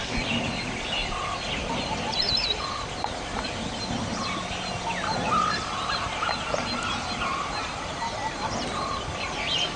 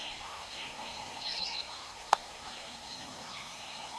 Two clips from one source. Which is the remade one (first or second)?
second